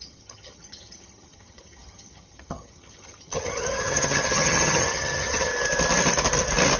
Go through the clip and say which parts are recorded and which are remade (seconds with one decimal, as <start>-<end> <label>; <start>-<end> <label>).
0.0-5.5 remade; 5.5-6.8 recorded